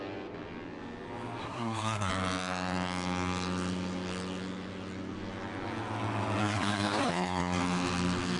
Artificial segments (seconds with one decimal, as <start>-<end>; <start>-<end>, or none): 1.4-2.1; 6.4-7.6